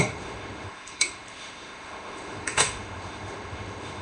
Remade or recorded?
remade